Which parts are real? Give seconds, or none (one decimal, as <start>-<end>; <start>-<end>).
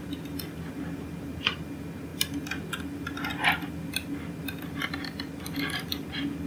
0.0-6.5